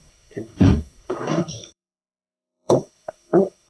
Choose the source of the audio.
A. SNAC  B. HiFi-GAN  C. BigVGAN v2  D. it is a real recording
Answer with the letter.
A